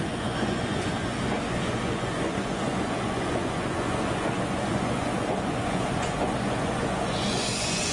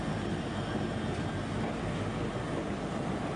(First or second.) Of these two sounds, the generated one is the first